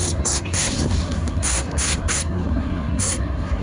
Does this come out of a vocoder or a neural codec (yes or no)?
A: yes